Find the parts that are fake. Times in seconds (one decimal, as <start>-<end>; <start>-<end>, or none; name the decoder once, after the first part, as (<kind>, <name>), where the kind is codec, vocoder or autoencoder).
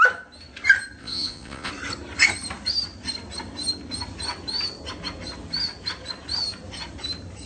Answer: 1.0-1.7 (vocoder, Vocos)